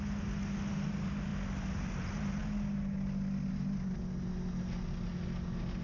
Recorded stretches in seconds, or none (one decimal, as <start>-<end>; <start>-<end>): 0.0-5.8